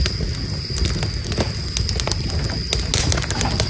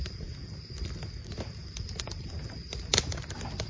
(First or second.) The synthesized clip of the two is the second